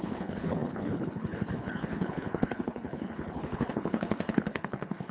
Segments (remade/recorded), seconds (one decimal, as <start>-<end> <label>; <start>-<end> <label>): 0.0-5.1 remade

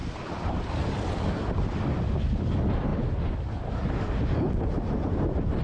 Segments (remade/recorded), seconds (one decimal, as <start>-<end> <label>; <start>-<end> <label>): 0.0-5.6 recorded

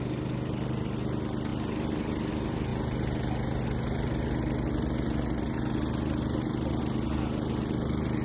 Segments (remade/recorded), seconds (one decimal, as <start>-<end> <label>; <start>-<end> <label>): 0.0-8.2 recorded

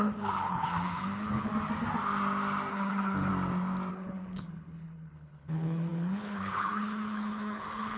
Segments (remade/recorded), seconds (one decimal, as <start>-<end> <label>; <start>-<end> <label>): 0.0-1.5 remade; 1.5-2.7 recorded; 2.7-3.3 remade; 3.3-3.9 recorded; 3.9-8.0 remade